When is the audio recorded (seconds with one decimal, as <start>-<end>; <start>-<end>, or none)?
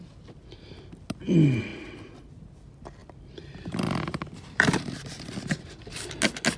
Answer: 0.0-3.0; 6.1-6.6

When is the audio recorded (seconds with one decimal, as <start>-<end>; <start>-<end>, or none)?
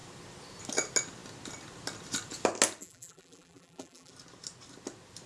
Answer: 0.0-2.8; 4.1-5.3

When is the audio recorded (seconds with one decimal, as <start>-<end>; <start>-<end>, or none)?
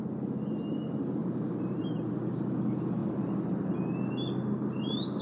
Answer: 0.0-1.2; 2.4-3.0; 3.7-5.2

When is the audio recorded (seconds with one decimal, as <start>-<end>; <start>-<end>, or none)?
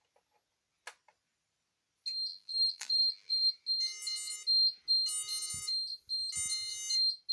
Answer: 0.0-2.3; 3.5-7.3